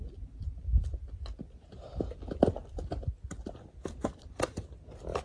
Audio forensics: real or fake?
real